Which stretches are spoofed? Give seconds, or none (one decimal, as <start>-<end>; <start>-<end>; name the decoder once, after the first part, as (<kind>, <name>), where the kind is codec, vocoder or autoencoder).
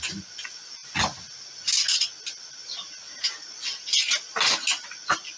none